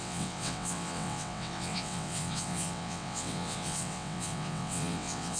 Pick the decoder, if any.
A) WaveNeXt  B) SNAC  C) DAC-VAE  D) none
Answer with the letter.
A